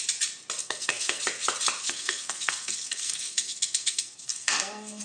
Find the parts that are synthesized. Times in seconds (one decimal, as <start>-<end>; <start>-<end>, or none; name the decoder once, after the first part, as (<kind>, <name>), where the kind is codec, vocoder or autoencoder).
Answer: 0.6-1.2 (codec, SNAC); 1.8-5.0